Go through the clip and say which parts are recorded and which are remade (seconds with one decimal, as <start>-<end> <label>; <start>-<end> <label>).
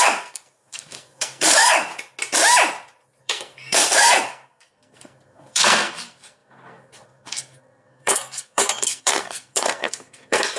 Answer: 0.0-1.9 remade; 1.9-3.2 recorded; 3.2-10.6 remade